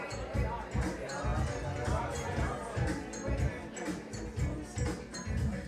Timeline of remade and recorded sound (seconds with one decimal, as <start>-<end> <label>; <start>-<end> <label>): 0.0-5.7 recorded